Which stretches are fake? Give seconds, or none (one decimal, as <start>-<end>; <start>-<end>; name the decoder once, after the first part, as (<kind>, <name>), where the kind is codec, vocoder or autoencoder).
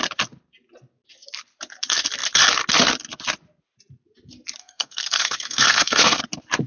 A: 4.6-6.2 (codec, SNAC)